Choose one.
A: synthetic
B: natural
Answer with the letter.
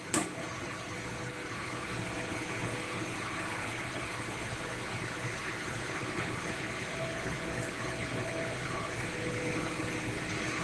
A